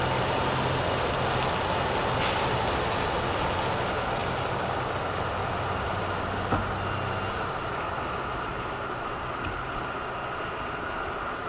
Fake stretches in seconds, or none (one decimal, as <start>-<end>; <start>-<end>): none